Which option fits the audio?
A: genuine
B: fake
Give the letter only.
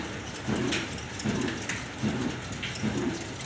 A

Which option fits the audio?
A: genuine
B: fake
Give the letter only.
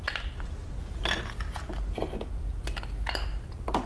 A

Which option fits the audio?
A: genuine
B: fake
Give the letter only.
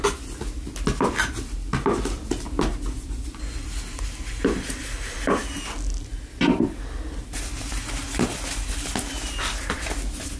A